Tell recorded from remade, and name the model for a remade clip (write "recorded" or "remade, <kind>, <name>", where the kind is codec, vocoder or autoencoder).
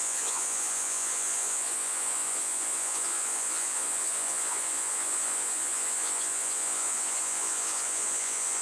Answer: remade, vocoder, Vocos